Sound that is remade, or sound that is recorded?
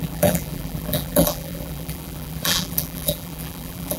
remade